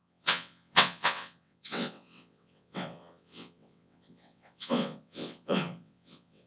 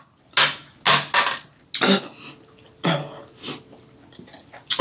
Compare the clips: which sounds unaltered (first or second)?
second